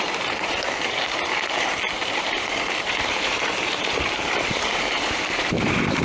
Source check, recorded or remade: remade